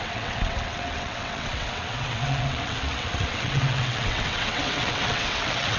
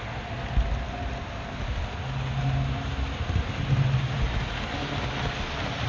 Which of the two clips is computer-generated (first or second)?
first